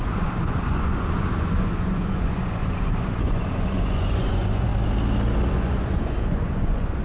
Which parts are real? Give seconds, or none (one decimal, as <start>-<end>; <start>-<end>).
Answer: 4.7-5.5